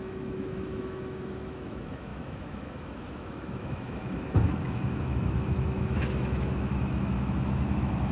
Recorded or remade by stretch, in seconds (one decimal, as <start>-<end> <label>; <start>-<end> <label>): 0.0-8.1 remade